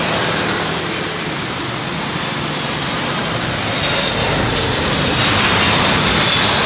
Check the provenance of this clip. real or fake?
real